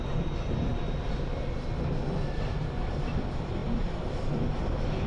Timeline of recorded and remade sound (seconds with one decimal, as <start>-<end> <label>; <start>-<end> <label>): 0.0-0.7 recorded; 0.7-3.0 remade; 3.0-3.6 recorded; 3.6-4.4 remade; 4.4-5.1 recorded